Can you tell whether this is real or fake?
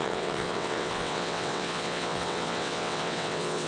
fake